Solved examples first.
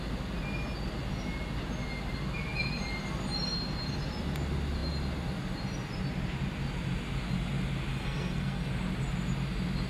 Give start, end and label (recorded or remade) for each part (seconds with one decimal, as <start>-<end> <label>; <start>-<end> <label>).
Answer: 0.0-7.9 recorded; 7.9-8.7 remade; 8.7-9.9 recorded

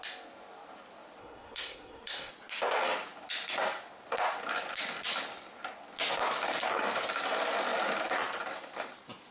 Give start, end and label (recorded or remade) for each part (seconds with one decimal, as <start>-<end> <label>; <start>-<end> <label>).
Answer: 0.0-1.2 recorded; 1.2-2.3 remade; 2.3-9.3 recorded

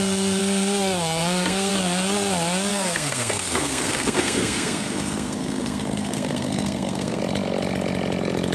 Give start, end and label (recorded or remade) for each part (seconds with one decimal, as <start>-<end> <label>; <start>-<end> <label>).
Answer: 0.0-0.4 recorded; 0.4-1.7 remade; 1.7-2.7 recorded; 2.7-7.2 remade; 7.2-8.5 recorded

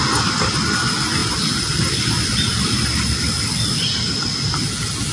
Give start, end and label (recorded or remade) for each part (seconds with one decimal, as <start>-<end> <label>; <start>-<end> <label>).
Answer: 0.0-5.1 recorded